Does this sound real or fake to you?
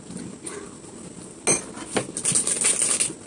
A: real